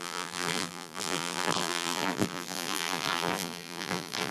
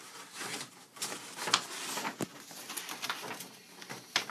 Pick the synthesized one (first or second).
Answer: first